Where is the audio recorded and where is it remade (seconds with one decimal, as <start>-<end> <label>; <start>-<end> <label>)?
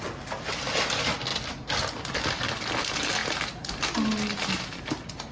0.0-5.3 recorded